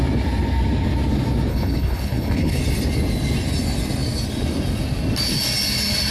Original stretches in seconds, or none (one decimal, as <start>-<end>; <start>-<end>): 0.0-1.5; 2.6-6.1